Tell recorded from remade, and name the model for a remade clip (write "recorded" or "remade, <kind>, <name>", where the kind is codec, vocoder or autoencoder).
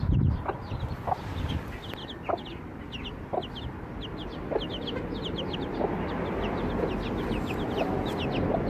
recorded